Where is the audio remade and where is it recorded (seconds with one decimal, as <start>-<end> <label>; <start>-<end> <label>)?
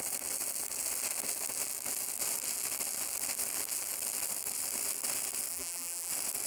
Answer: 0.0-5.5 recorded; 5.5-6.1 remade; 6.1-6.5 recorded